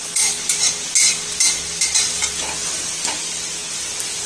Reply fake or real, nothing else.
real